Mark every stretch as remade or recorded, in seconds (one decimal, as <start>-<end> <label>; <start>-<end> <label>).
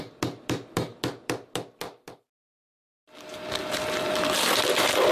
0.0-5.1 recorded